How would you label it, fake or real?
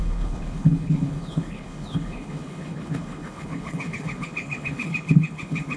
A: fake